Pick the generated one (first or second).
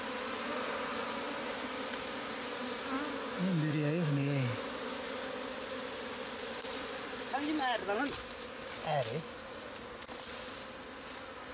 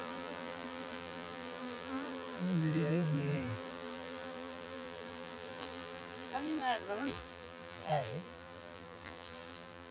second